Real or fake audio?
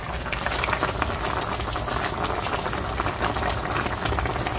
real